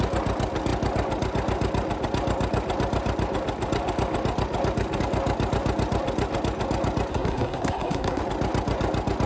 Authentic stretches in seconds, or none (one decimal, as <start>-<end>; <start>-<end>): 0.0-7.1; 8.2-9.3